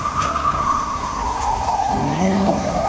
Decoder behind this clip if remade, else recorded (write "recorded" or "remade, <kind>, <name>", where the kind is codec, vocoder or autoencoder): remade, codec, SNAC